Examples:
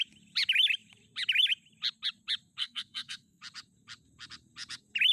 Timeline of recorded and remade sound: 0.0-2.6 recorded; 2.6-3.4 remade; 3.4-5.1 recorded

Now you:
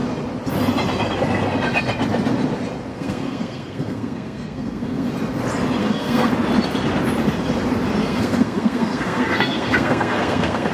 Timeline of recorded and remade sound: 0.0-2.9 recorded; 2.9-5.1 remade; 5.1-5.8 recorded; 5.8-6.3 remade; 6.3-8.0 recorded; 8.0-10.7 remade